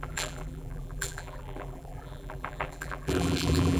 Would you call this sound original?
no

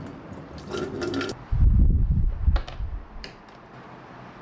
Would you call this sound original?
yes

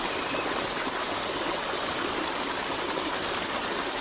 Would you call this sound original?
yes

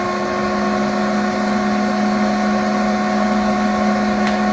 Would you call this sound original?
yes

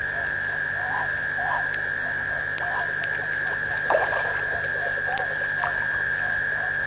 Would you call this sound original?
no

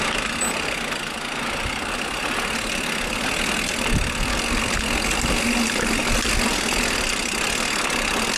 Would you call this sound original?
yes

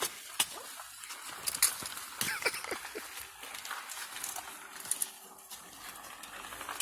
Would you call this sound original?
yes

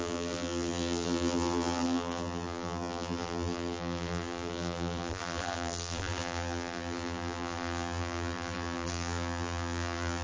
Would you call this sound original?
no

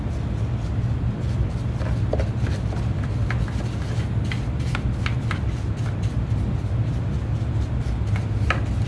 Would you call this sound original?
yes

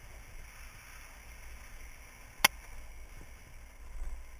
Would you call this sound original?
yes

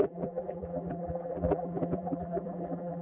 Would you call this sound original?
no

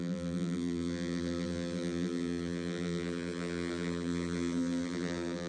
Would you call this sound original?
no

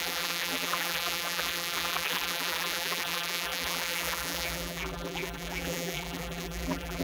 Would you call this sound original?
no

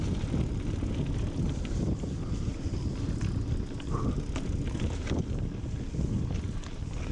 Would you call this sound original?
yes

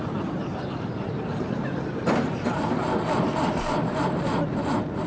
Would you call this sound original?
no